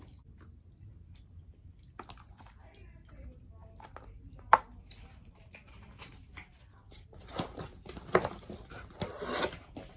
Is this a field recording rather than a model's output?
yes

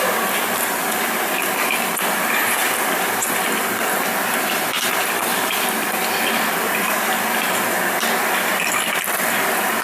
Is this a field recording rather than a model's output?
yes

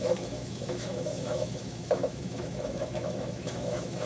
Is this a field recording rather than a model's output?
no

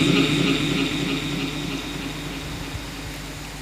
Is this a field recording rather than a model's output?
yes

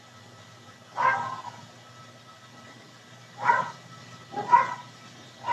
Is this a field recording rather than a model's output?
yes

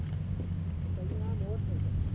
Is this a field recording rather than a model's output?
yes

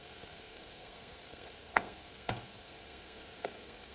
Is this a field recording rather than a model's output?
no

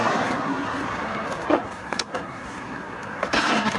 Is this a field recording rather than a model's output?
no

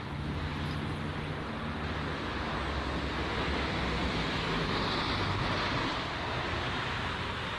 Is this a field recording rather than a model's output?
yes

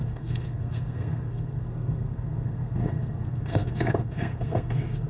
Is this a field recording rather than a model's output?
no